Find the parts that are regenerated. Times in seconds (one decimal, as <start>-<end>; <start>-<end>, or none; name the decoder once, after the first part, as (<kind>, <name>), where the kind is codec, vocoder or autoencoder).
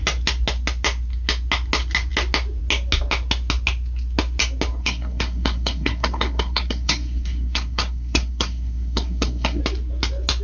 4.8-9.6 (codec, SNAC)